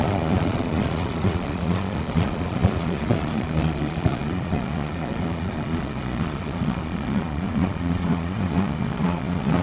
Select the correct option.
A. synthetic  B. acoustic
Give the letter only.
A